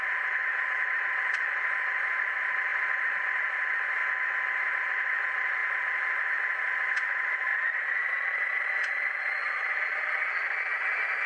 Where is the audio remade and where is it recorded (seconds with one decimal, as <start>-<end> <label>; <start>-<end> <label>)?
0.0-4.0 remade; 4.0-4.6 recorded; 4.6-11.3 remade